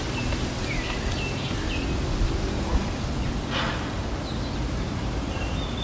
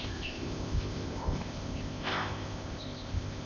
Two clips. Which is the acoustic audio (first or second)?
first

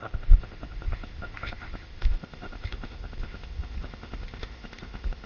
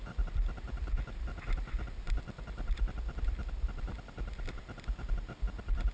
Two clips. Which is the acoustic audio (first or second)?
second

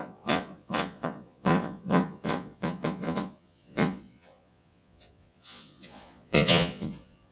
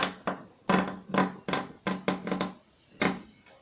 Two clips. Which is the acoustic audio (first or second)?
second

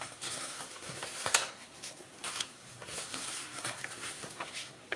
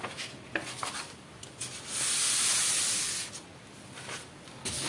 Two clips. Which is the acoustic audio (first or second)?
second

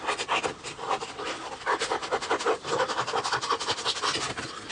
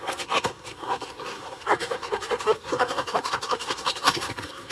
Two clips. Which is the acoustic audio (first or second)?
first